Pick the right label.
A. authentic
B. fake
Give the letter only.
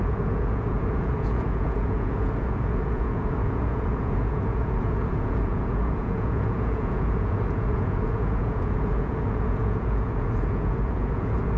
B